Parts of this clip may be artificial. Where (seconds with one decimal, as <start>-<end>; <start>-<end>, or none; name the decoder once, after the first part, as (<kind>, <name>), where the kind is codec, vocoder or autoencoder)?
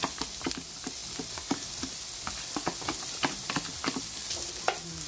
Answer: none